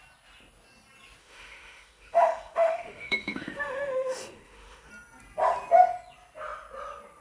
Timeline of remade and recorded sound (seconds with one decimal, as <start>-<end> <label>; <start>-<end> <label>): 0.0-1.2 recorded; 1.2-4.9 remade; 4.9-7.2 recorded